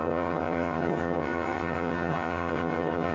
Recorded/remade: remade